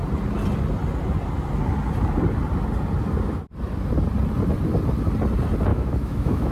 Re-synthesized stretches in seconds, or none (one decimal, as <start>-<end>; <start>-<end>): 5.7-6.5